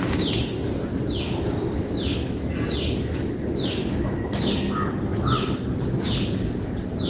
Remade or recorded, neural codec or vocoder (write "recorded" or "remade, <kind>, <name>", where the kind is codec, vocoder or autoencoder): recorded